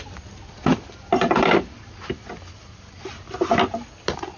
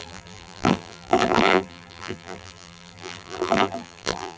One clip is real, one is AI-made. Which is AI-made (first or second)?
second